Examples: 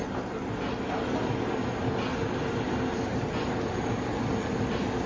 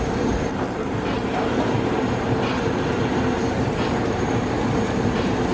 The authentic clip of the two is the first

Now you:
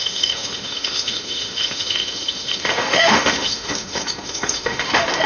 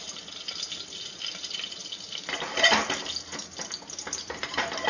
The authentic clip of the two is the second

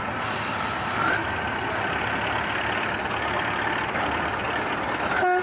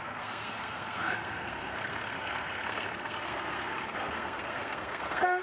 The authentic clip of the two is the first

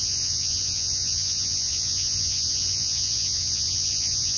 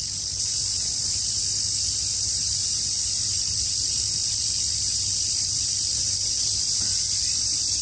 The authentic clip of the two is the second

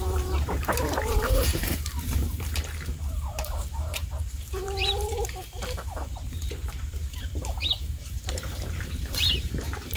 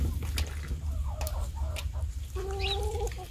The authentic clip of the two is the second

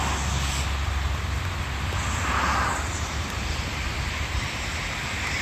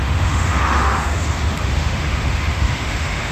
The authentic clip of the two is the first